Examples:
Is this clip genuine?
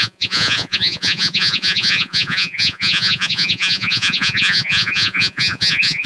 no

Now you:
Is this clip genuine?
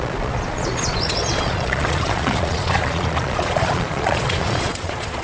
no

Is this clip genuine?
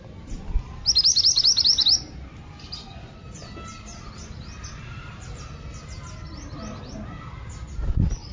yes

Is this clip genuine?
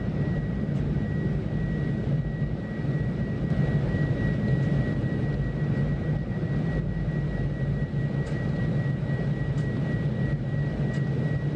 yes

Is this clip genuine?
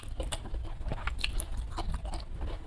yes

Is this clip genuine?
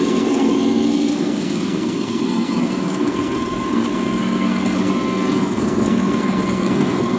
no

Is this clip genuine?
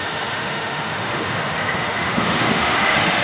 no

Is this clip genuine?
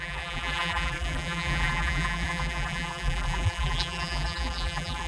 no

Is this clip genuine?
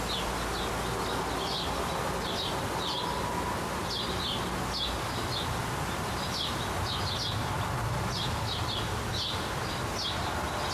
yes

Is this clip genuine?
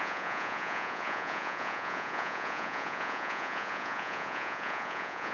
no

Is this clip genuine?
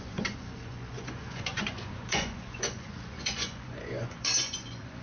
no